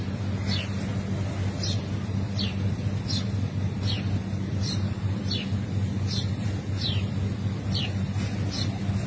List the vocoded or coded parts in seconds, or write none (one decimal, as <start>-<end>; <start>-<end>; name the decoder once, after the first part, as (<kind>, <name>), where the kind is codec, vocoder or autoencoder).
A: none